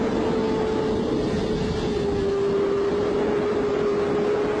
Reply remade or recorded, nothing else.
recorded